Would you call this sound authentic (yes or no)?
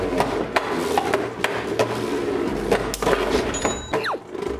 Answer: yes